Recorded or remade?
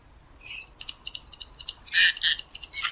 recorded